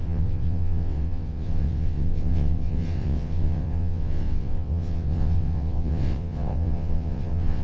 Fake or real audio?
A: fake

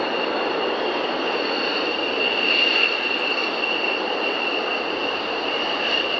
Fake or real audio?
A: real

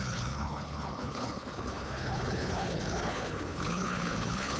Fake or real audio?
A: fake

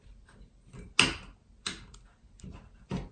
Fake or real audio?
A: real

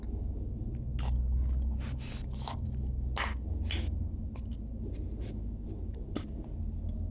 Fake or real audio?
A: real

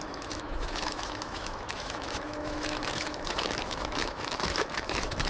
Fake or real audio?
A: fake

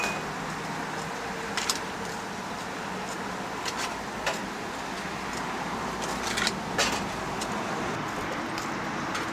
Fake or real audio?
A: real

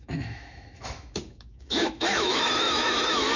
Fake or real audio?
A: fake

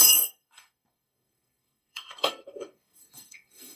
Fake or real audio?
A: fake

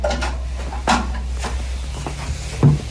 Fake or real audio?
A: real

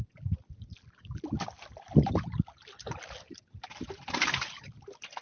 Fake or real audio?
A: real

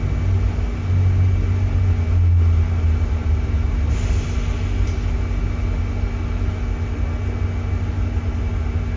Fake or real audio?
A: real